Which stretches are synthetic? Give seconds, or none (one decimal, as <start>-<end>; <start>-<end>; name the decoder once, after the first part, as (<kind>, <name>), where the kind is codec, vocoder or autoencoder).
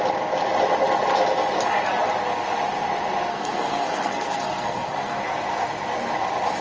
3.3-5.2 (codec, SNAC)